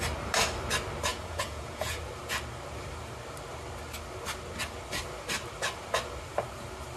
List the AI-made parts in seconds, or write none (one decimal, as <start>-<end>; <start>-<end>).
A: 1.1-2.0